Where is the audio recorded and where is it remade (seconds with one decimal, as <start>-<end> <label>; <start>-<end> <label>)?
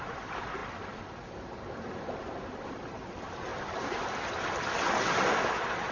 0.0-3.5 remade; 3.5-5.9 recorded